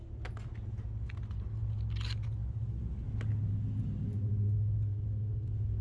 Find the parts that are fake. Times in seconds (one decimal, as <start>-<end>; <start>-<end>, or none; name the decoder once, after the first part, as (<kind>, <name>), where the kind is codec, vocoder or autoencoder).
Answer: none